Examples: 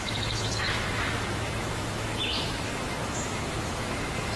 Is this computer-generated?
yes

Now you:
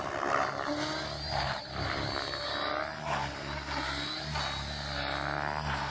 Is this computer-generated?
no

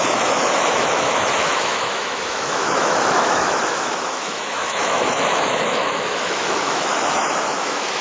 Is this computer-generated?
yes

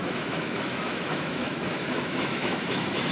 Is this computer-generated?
yes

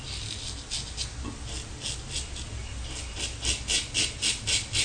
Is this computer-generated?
no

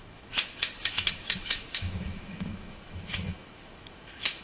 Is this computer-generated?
yes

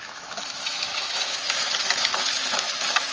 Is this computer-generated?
yes